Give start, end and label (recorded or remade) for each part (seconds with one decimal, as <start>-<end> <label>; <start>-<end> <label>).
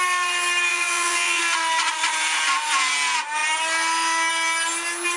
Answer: 0.0-0.7 recorded; 0.7-1.4 remade; 1.4-5.2 recorded